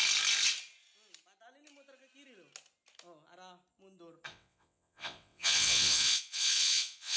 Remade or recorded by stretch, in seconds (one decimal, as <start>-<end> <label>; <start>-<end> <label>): 0.0-4.3 recorded; 4.3-7.2 remade